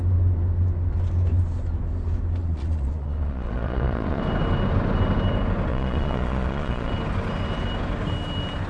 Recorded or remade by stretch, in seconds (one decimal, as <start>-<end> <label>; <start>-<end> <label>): 0.0-2.4 recorded; 2.4-4.2 remade; 4.2-5.7 recorded; 5.7-6.9 remade; 6.9-8.7 recorded